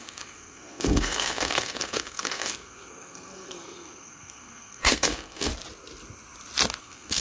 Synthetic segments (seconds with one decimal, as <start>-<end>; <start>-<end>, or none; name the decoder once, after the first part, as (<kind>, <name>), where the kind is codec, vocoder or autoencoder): 0.0-5.5 (codec, SNAC); 6.8-7.2

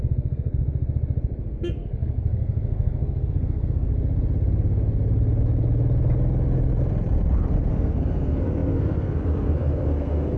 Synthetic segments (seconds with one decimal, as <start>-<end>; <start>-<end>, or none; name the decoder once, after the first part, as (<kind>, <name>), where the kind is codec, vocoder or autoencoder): 0.0-0.5 (codec, SNAC); 1.4-3.9; 7.7-10.4

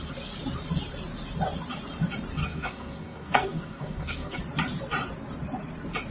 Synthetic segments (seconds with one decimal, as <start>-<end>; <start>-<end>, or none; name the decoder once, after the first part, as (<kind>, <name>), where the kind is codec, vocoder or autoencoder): 2.4-4.4 (codec, SNAC)